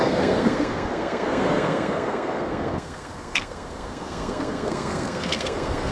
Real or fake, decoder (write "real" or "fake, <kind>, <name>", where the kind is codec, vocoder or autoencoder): fake, codec, SNAC